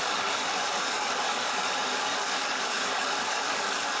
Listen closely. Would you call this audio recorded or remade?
remade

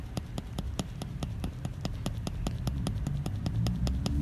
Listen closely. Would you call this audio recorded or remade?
recorded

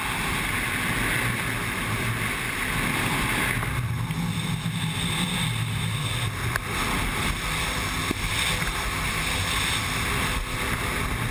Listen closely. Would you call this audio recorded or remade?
recorded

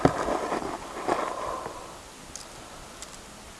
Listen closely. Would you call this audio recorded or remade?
recorded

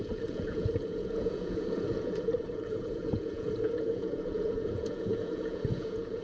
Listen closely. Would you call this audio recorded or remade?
remade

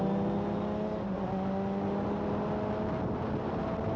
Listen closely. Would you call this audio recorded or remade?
recorded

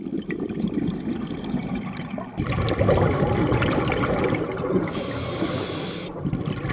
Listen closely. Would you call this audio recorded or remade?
recorded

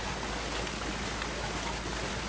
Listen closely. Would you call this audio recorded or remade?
recorded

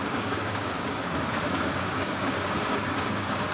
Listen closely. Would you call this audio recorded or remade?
remade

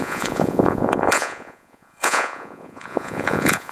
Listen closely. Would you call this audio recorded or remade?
remade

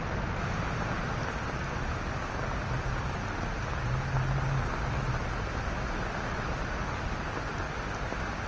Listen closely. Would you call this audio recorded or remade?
recorded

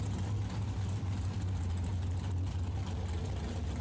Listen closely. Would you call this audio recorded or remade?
recorded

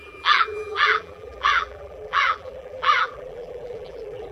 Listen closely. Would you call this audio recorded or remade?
remade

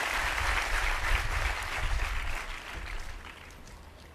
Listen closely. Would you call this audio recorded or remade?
recorded